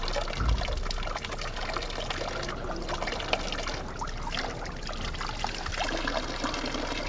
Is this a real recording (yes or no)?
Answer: yes